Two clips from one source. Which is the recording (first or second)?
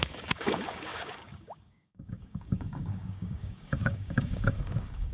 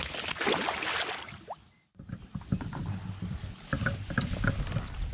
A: second